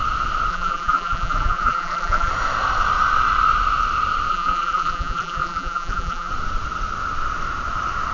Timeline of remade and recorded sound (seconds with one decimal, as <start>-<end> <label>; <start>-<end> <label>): 0.0-0.5 recorded; 0.5-2.3 remade; 2.3-4.3 recorded; 4.3-6.3 remade; 6.3-8.1 recorded